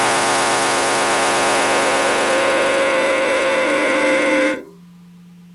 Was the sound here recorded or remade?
recorded